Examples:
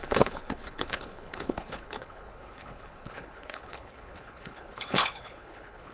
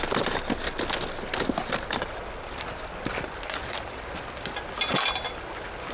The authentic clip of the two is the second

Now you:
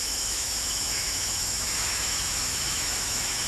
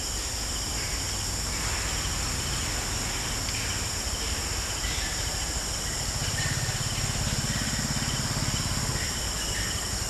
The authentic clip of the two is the second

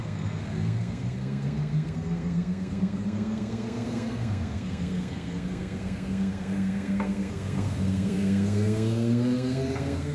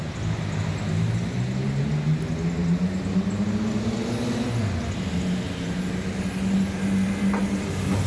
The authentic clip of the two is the second